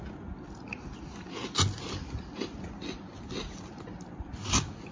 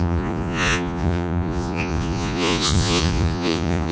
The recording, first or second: first